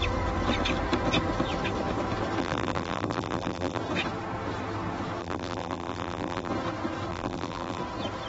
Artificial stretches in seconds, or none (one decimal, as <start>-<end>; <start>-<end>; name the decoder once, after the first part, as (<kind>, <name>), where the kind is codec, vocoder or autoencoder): 2.4-3.8 (vocoder, BigVGAN v2); 5.2-6.5; 7.1-7.8